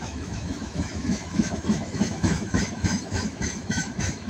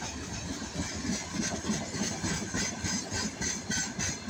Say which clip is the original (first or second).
second